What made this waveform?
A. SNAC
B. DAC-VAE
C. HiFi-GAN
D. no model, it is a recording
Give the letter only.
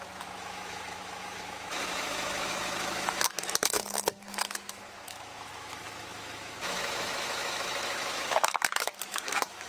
B